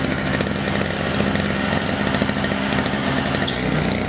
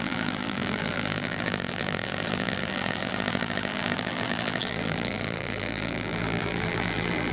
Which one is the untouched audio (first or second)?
first